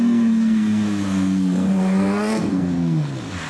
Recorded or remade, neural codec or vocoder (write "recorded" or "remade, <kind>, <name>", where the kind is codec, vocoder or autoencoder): remade, codec, SNAC